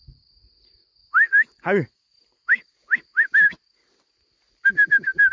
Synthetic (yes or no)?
no